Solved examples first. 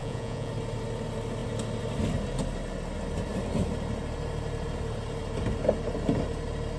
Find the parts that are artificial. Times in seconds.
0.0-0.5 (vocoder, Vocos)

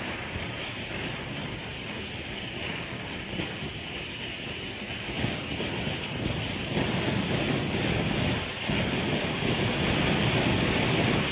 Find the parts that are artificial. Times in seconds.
none